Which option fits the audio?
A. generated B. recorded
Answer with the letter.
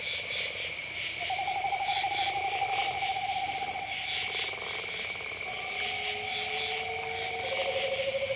B